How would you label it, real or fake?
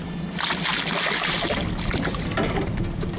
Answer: real